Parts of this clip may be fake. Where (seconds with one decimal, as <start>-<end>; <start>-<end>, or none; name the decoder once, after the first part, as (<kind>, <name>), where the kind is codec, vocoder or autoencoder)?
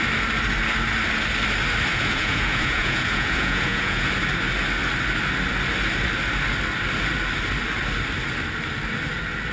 1.9-4.1 (vocoder, Vocos)